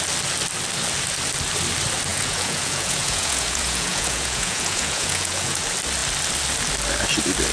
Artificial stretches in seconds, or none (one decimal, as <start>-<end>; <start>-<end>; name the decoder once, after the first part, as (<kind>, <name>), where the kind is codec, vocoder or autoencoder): 2.1-5.6 (vocoder, Vocos)